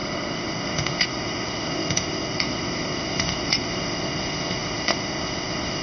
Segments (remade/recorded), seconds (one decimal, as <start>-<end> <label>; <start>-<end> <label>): 0.0-5.8 remade